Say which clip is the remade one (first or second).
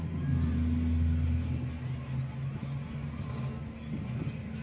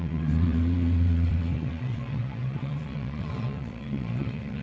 second